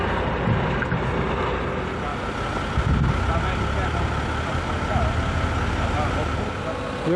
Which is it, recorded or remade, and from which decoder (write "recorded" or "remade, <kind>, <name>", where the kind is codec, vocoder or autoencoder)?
recorded